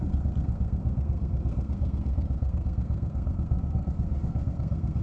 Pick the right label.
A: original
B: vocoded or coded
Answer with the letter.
B